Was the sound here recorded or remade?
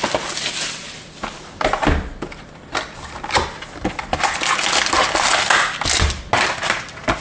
recorded